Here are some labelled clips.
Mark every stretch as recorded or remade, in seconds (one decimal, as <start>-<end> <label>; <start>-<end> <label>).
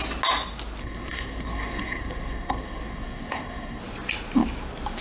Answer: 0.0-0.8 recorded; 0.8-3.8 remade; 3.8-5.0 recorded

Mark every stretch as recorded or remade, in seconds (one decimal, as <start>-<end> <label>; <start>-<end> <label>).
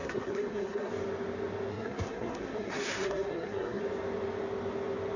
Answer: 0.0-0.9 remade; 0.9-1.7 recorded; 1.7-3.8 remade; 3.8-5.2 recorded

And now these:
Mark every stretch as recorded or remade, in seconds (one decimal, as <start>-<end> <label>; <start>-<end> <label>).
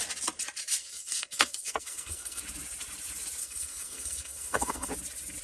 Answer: 0.0-0.8 recorded; 0.8-2.4 remade; 2.4-3.4 recorded; 3.4-4.9 remade; 4.9-5.4 recorded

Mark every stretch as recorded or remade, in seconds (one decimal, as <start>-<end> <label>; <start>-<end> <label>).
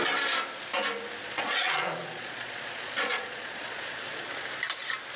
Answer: 0.0-1.2 recorded; 1.2-4.3 remade; 4.3-5.2 recorded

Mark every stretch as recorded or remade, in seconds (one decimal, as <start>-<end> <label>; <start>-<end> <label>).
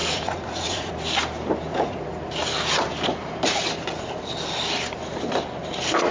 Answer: 0.0-0.9 remade; 0.9-1.7 recorded; 1.7-2.2 remade; 2.2-6.1 recorded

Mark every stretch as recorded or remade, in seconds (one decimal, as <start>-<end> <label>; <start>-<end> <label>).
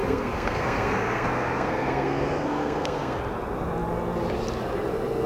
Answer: 0.0-3.2 remade; 3.2-5.3 recorded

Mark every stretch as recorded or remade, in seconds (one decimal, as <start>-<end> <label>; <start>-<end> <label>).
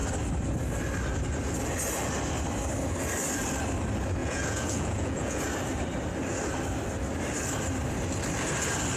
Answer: 0.0-4.2 recorded; 4.2-5.4 remade; 5.4-9.0 recorded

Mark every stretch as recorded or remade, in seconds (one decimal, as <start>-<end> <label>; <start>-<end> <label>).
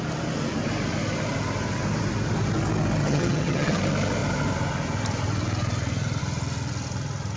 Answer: 0.0-3.0 recorded; 3.0-3.8 remade; 3.8-7.4 recorded